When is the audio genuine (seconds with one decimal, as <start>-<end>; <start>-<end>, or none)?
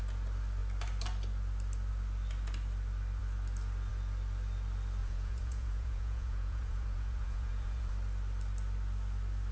0.0-5.0; 7.9-9.5